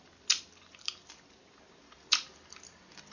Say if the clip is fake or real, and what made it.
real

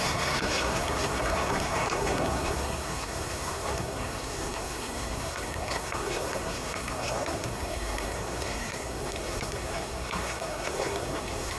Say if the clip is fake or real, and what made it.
fake, codec, SNAC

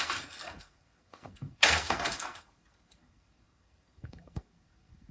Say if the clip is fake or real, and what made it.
fake, codec, SNAC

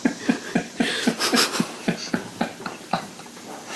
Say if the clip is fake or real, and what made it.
real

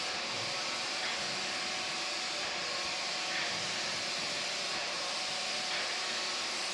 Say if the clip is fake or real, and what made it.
real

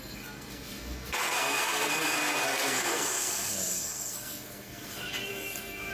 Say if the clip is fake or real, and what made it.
fake, codec, SNAC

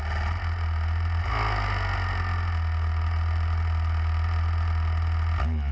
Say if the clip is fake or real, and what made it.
real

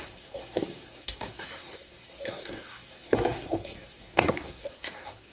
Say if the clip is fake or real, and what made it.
fake, codec, SNAC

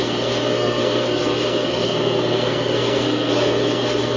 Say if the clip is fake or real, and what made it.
fake, codec, SNAC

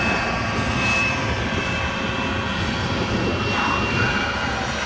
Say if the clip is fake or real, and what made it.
real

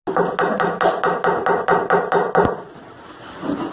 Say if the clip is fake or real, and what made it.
real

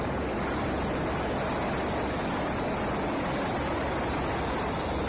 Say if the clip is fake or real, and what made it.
real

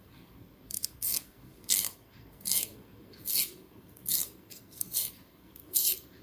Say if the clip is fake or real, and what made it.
fake, codec, SNAC